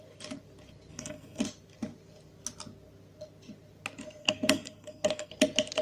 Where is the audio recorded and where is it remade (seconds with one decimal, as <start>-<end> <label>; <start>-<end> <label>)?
0.0-0.9 recorded; 0.9-1.4 remade; 1.4-4.2 recorded; 4.2-5.3 remade; 5.3-5.8 recorded